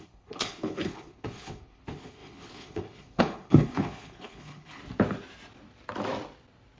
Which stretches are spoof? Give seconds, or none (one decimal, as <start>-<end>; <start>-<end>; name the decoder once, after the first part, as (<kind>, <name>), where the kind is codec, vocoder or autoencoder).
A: 0.0-4.8 (codec, HILCodec)

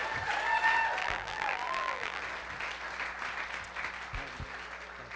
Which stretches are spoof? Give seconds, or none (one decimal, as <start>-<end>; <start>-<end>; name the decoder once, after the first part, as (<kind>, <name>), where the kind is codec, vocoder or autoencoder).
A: 1.0-2.2 (vocoder, BigVGAN v2)

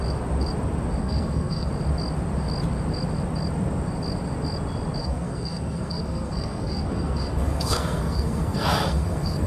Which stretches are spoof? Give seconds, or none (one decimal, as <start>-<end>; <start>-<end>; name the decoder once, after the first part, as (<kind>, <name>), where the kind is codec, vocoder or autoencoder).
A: 1.0-1.7 (codec, SNAC); 5.0-9.5

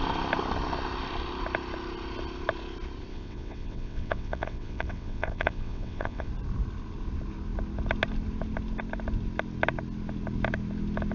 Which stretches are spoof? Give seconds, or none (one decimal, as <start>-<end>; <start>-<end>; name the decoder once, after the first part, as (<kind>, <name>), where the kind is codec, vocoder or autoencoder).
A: 3.1-6.3 (vocoder, WaveNeXt)

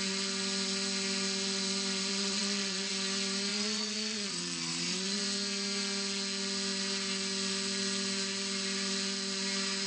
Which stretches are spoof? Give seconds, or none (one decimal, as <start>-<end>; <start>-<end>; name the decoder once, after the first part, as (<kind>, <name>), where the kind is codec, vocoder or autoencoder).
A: 2.1-2.9 (vocoder, Vocos); 3.5-5.2

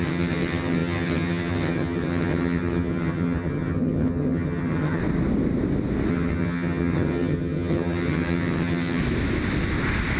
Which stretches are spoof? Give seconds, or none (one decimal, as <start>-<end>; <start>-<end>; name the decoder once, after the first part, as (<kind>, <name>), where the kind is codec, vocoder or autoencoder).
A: 0.0-5.0 (vocoder, HiFi-GAN); 6.1-9.0